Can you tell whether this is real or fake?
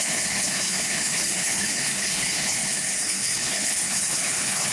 fake